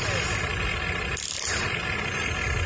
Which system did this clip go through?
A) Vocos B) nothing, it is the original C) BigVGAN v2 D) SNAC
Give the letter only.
B